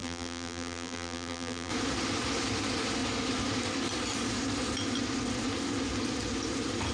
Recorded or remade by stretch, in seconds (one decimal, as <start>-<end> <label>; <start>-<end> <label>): 0.0-1.7 remade; 1.7-6.9 recorded